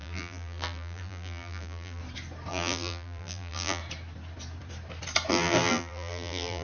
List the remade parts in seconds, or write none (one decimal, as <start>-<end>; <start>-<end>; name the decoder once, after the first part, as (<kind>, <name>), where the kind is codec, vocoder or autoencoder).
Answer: 0.0-2.0 (vocoder, BigVGAN v2); 2.5-3.8; 5.3-6.6